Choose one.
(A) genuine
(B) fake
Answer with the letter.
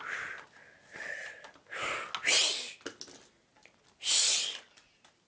A